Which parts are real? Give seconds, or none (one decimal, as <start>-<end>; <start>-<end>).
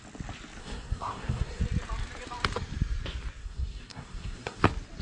0.0-0.6; 1.6-3.4; 4.6-5.0